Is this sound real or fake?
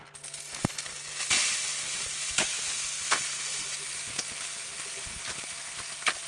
real